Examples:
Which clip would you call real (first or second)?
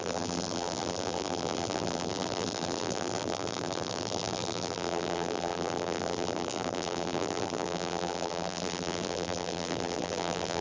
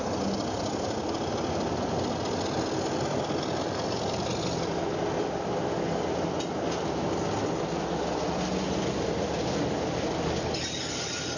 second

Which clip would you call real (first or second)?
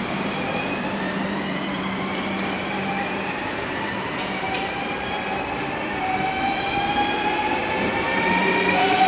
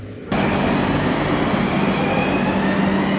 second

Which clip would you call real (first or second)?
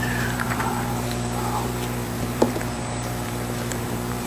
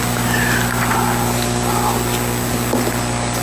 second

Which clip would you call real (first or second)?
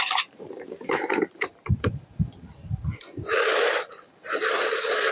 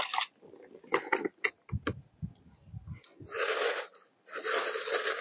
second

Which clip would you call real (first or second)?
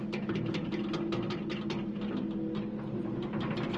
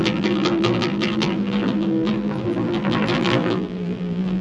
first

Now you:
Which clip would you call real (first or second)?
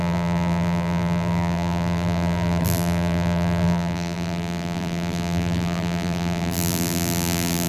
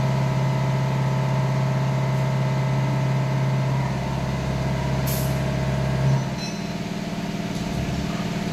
second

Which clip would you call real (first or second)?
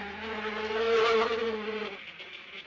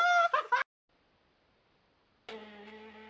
second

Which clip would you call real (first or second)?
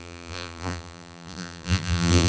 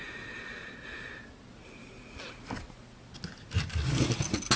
second